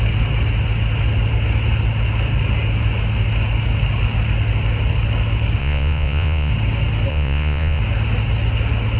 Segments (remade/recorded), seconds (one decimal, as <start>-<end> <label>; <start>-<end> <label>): 0.0-5.6 recorded; 5.6-6.5 remade; 6.5-7.1 recorded; 7.1-7.8 remade; 7.8-9.0 recorded